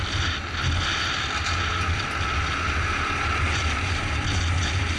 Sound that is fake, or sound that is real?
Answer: real